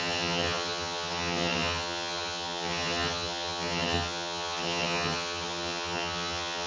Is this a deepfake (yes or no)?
yes